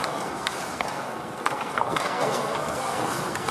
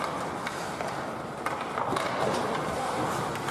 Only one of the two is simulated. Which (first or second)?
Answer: first